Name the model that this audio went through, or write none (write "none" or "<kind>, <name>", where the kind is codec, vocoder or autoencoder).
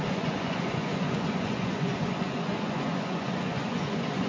vocoder, Vocos